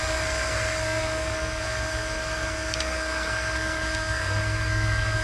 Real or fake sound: fake